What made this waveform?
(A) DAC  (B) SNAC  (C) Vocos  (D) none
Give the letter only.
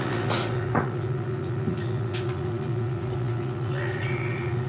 C